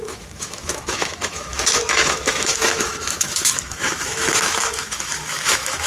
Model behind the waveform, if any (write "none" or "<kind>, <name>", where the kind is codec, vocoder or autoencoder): autoencoder, DAC-VAE